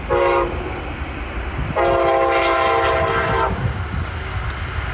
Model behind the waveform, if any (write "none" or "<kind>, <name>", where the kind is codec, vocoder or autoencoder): none